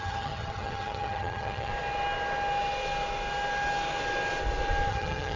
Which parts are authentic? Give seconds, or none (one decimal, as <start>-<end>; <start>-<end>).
1.7-4.9